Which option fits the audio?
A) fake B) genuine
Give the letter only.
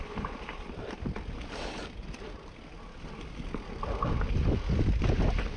B